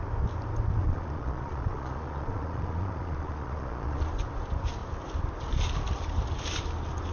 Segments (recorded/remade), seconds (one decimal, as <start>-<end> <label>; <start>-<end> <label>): 0.0-0.8 recorded; 0.8-4.1 remade; 4.1-7.1 recorded